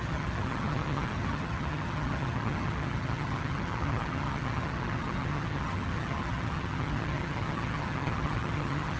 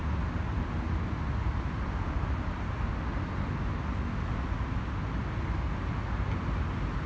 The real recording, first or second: second